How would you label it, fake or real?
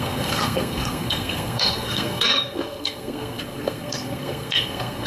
fake